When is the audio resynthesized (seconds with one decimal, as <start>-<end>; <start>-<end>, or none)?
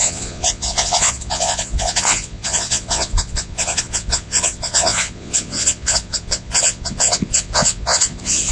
0.0-8.5